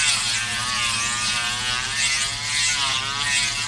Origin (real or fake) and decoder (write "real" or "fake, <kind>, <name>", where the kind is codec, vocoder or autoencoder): real